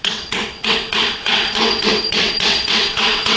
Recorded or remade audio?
remade